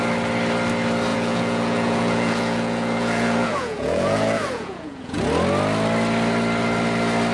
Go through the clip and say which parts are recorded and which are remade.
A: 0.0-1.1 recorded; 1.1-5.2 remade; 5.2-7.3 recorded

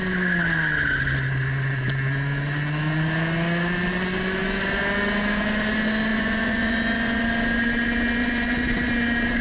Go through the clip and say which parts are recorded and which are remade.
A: 0.0-6.1 recorded; 6.1-7.2 remade; 7.2-8.2 recorded; 8.2-8.9 remade; 8.9-9.4 recorded

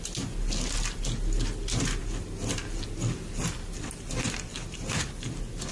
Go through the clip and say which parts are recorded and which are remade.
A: 0.0-5.7 recorded

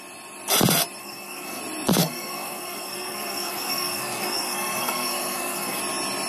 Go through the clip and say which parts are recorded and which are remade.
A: 0.0-1.0 recorded; 1.0-1.6 remade; 1.6-2.0 recorded; 2.0-5.8 remade; 5.8-6.3 recorded